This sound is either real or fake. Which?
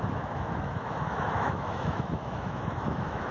fake